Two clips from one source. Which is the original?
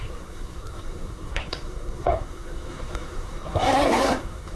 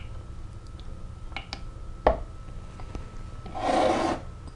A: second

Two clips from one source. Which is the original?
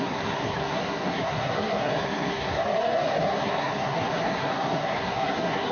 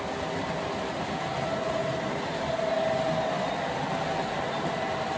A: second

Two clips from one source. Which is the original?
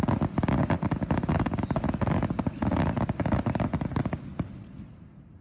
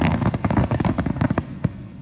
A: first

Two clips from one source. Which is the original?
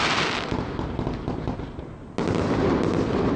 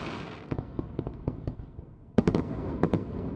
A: first